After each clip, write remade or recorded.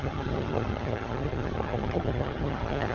remade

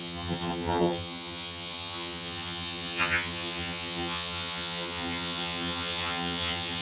remade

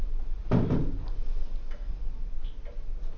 recorded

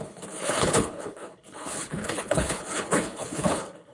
remade